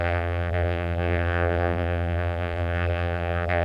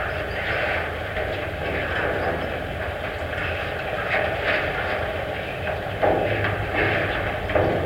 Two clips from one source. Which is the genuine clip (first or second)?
second